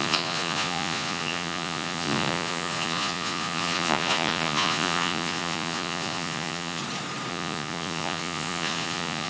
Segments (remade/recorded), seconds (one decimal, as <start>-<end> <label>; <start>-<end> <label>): 0.0-6.8 remade; 6.8-7.3 recorded; 7.3-9.3 remade